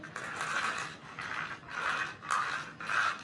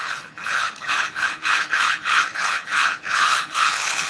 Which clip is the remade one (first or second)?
second